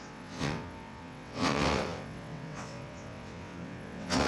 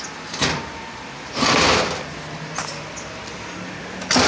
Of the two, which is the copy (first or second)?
first